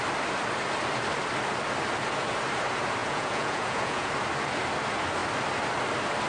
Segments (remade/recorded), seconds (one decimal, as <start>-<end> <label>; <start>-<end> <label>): 0.0-3.0 recorded; 3.0-4.1 remade; 4.1-6.3 recorded